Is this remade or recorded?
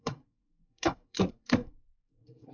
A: remade